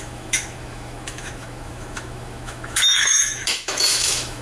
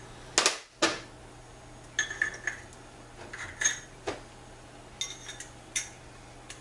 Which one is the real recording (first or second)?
second